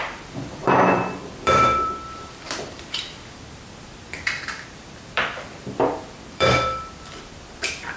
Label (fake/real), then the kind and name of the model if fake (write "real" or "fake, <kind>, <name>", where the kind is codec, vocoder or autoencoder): fake, vocoder, BigVGAN v2